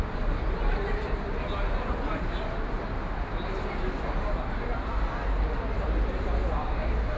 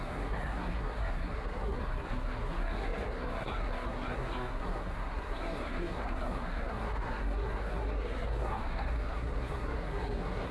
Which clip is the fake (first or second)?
second